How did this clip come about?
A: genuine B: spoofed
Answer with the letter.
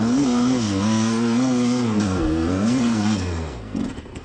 B